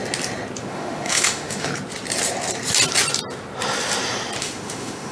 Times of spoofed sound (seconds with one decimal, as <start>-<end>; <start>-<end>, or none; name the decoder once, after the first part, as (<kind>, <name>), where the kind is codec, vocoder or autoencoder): 0.6-1.7 (autoencoder, DAC-VAE); 4.4-5.1

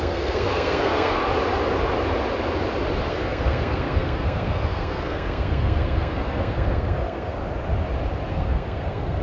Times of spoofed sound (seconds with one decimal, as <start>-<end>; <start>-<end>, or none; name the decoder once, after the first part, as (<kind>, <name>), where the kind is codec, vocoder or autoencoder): 0.0-1.2 (codec, SNAC); 3.1-7.4; 8.3-9.2

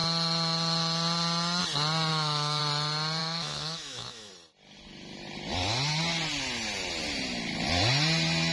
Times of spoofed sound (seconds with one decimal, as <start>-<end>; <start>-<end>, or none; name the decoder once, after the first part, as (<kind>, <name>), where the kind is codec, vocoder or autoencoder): 2.1-2.6 (autoencoder, DAC-VAE); 3.2-4.3

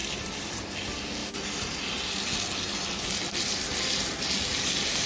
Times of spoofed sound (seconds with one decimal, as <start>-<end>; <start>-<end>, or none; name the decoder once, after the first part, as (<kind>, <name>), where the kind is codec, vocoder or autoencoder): 0.0-0.5 (vocoder, BigVGAN v2)

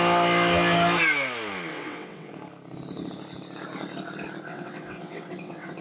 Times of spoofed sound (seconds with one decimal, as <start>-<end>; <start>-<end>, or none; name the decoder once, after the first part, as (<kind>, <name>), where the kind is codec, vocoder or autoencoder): 1.7-2.3 (vocoder, WaveNeXt); 4.5-5.8

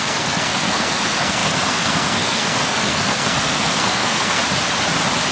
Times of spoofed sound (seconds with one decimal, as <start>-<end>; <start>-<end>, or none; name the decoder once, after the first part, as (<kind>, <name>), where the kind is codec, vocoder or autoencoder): 0.0-4.4 (codec, SNAC)